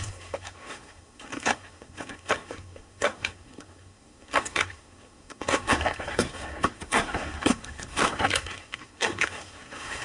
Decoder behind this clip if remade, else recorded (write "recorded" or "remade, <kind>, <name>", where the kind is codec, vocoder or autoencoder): remade, codec, SNAC